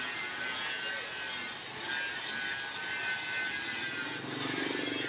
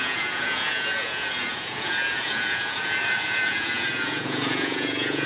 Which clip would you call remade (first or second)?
second